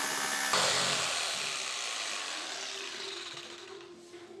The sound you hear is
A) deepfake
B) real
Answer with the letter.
B